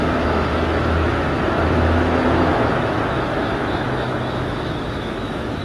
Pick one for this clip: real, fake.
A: fake